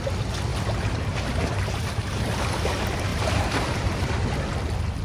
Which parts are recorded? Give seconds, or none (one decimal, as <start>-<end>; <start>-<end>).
0.0-0.5; 2.4-3.1; 4.4-5.0